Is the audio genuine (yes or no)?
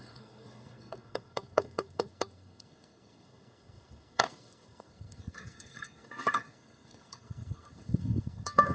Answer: no